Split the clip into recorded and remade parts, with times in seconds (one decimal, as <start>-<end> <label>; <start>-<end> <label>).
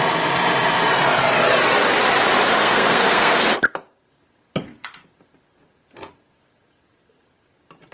0.0-2.6 recorded; 2.6-3.4 remade; 3.4-7.9 recorded